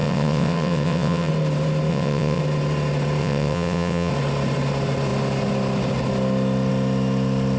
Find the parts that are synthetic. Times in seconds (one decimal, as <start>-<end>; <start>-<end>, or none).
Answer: 0.0-1.3; 1.9-2.4; 3.2-4.1